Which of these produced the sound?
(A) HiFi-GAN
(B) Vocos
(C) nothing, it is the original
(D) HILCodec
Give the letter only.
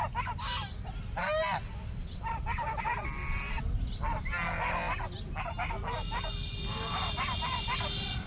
C